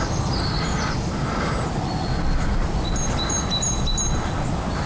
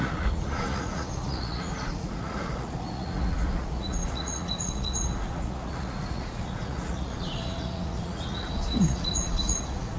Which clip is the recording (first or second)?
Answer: first